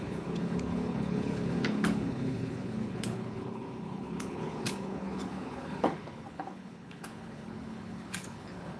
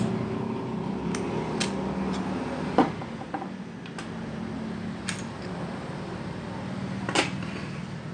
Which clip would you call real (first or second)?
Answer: second